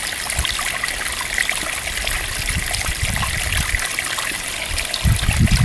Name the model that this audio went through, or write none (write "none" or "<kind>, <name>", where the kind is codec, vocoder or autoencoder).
none